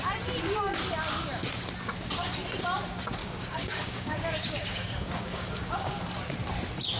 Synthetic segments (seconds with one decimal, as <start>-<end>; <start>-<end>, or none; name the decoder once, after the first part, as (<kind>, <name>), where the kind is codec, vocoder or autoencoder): 3.2-5.9 (codec, DAC)